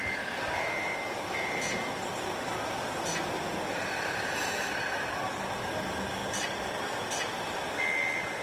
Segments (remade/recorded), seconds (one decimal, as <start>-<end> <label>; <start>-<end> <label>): 0.0-8.4 recorded